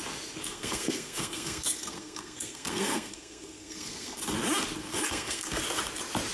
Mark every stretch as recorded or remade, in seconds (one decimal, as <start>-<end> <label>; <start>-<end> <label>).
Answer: 0.0-0.4 recorded; 0.4-4.2 remade; 4.2-4.8 recorded; 4.8-5.6 remade; 5.6-6.3 recorded

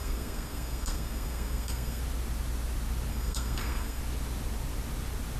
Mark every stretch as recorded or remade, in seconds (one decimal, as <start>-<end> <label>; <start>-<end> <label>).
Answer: 0.0-2.0 remade; 2.0-3.1 recorded; 3.1-4.0 remade; 4.0-5.4 recorded